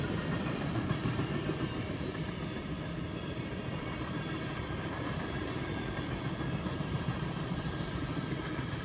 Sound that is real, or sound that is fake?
fake